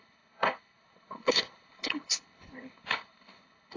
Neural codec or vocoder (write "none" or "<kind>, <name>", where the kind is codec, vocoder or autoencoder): codec, HILCodec